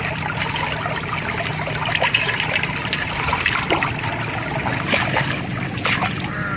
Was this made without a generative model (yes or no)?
yes